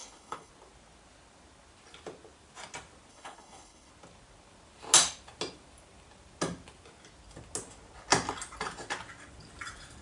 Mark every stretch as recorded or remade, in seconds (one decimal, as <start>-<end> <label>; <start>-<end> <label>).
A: 0.0-0.5 remade; 0.5-3.1 recorded; 3.1-3.9 remade; 3.9-10.0 recorded